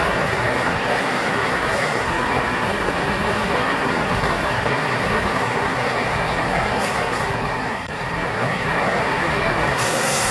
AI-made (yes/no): yes